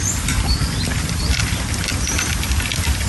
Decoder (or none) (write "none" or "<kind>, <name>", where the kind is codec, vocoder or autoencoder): none